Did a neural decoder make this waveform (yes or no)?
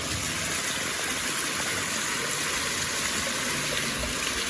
no